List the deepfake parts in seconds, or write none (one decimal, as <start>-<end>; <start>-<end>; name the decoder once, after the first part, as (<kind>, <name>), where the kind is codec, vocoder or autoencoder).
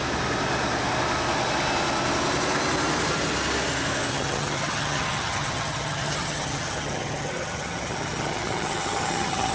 4.1-9.5 (vocoder, HiFi-GAN)